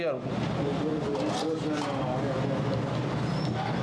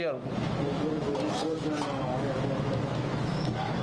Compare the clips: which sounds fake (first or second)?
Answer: second